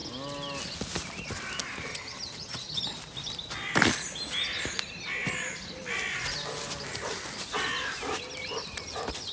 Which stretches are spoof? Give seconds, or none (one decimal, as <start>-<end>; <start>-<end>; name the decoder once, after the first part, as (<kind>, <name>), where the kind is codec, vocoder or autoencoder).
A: 1.9-2.8 (vocoder, HiFi-GAN)